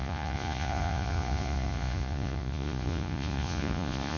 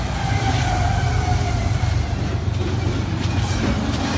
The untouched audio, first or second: second